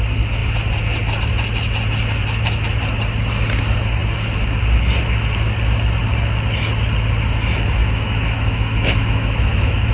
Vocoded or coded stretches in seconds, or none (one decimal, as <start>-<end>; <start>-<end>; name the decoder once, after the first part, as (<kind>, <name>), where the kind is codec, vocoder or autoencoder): 7.8-9.9 (autoencoder, DAC-VAE)